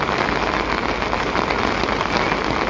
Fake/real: real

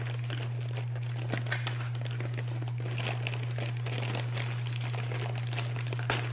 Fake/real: real